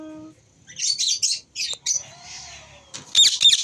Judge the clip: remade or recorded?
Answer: recorded